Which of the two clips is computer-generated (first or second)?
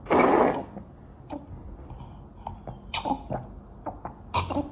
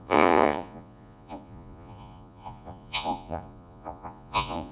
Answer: second